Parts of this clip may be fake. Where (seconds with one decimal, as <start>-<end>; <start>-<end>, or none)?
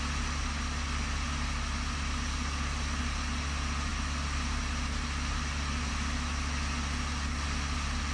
none